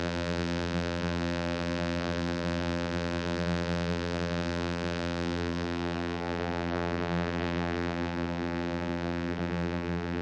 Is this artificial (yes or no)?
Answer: yes